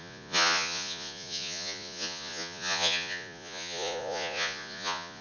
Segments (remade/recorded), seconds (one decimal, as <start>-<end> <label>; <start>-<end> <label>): 0.0-5.2 remade